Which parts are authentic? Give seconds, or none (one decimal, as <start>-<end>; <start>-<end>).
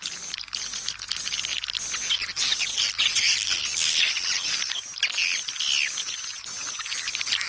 0.0-7.5